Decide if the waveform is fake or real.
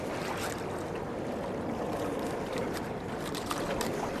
real